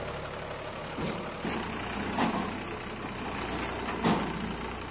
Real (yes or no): yes